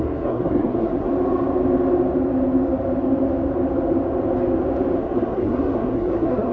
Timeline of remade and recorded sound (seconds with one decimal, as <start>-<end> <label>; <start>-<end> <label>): 0.0-1.1 remade; 1.1-5.0 recorded; 5.0-6.5 remade